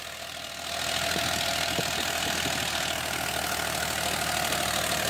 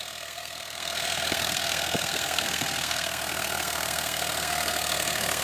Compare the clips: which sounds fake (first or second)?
second